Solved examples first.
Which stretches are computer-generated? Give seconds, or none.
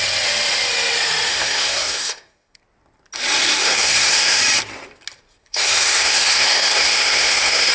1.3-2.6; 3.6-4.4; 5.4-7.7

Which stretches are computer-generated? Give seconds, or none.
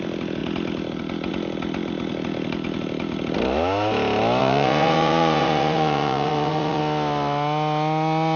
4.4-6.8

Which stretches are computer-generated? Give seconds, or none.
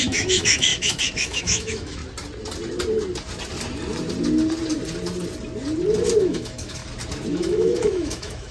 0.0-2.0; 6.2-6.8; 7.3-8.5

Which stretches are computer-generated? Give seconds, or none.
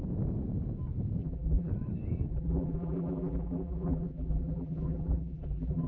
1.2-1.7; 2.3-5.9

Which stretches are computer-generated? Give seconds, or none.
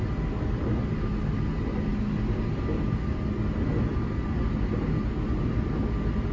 none